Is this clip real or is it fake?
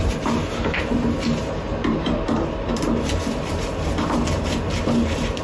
fake